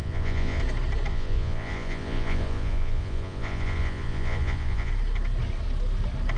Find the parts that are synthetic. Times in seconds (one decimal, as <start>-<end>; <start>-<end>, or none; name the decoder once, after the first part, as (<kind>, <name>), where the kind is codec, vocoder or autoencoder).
0.0-0.6 (vocoder, Vocos); 1.1-4.9